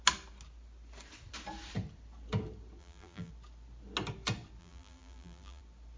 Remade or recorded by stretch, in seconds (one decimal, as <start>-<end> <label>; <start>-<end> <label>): 0.0-2.8 recorded; 2.8-3.3 remade; 3.3-4.6 recorded; 4.6-5.6 remade; 5.6-6.0 recorded